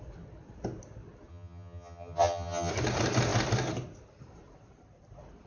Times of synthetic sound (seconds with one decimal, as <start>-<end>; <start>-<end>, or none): 1.3-2.7